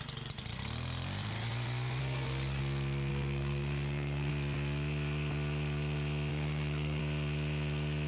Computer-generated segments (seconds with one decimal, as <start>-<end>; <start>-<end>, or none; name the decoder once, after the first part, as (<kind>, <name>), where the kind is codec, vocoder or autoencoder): 2.0-2.6 (codec, SNAC); 3.1-4.3; 6.3-7.0